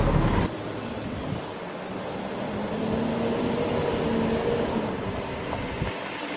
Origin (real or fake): real